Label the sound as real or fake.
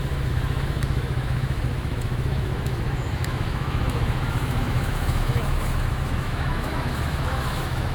fake